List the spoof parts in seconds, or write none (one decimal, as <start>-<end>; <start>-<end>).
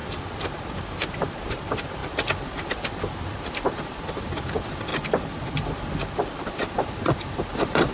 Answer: 1.5-2.0; 2.7-4.9; 6.3-7.9